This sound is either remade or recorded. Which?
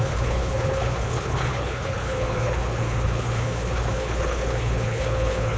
remade